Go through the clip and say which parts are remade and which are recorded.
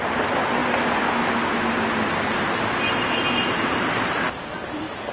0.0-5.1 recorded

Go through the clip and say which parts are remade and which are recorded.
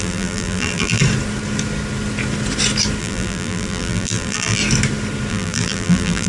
0.0-1.0 remade; 1.0-3.0 recorded; 3.0-4.6 remade; 4.6-5.3 recorded; 5.3-6.3 remade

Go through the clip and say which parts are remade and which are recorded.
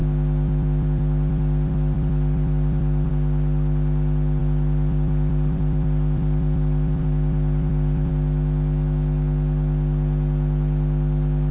0.0-3.1 remade; 3.1-4.4 recorded; 4.4-8.1 remade; 8.1-11.5 recorded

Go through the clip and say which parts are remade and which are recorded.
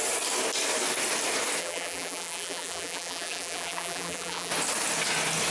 0.0-1.6 recorded; 1.6-4.5 remade; 4.5-5.5 recorded